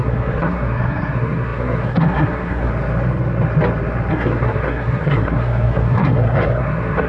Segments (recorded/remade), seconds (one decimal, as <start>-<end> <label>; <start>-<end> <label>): 0.0-2.7 remade; 2.7-4.1 recorded; 4.1-7.1 remade